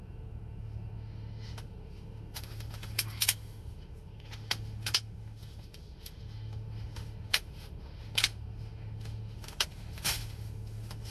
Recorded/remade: remade